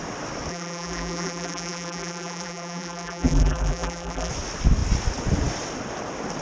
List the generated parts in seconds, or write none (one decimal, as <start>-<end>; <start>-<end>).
0.5-4.3